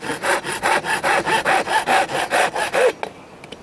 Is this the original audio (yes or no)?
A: yes